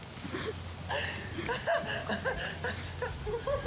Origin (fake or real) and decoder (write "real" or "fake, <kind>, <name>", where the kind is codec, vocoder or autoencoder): real